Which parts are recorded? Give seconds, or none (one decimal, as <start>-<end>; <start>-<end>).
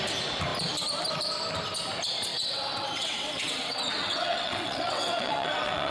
0.0-2.3